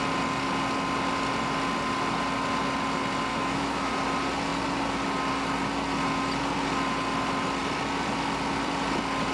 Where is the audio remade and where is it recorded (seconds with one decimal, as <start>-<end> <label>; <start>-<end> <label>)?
0.0-3.3 recorded; 3.3-3.9 remade; 3.9-9.3 recorded